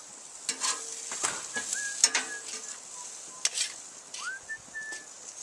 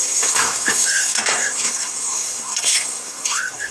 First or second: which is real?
first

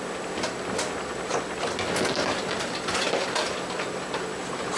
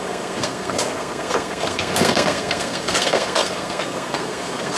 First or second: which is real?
first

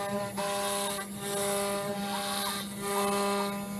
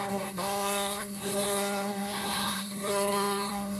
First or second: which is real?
first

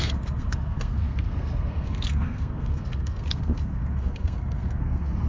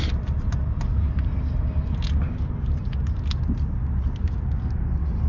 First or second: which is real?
second